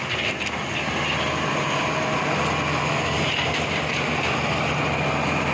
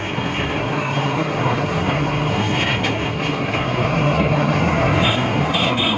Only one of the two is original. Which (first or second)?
first